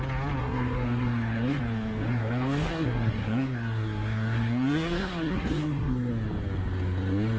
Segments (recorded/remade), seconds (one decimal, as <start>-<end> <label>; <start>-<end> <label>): 0.0-0.4 recorded; 0.4-1.6 remade; 1.6-2.1 recorded; 2.1-6.1 remade; 6.1-7.4 recorded